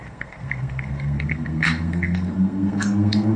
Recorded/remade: remade